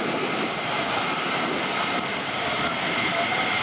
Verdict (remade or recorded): remade